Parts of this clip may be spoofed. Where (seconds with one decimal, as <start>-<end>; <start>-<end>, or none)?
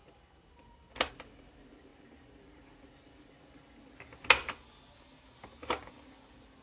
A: none